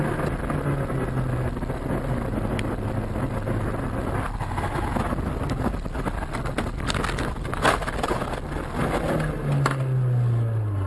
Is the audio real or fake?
real